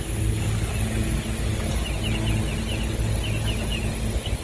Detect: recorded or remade recorded